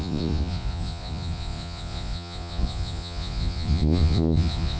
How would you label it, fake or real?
fake